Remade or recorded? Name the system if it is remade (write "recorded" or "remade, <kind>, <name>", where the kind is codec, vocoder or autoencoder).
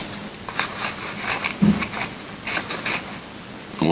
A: recorded